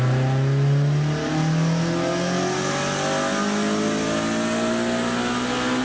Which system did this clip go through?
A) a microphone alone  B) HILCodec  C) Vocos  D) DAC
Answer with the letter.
A